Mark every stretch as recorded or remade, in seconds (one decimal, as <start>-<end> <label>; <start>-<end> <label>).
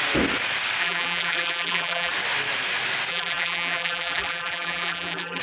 0.0-0.8 recorded; 0.8-2.1 remade; 2.1-3.1 recorded; 3.1-5.4 remade